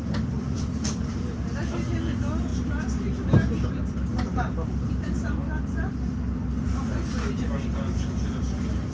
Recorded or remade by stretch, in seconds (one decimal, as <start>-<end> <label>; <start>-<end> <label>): 0.0-8.9 recorded